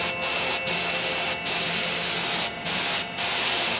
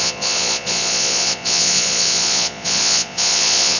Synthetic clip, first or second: second